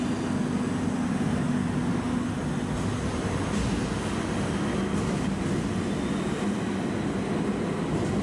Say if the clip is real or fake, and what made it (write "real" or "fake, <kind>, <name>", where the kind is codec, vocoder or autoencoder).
real